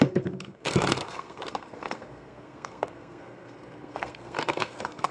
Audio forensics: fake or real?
fake